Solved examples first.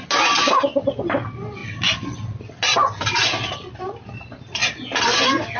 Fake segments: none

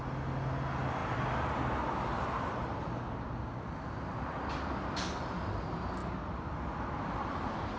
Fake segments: none